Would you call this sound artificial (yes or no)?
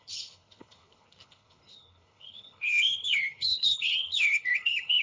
yes